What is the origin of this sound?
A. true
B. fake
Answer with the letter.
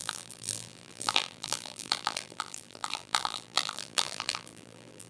B